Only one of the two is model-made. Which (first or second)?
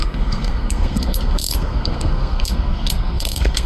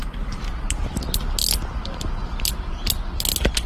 first